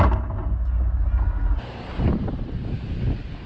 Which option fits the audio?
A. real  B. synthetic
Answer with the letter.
A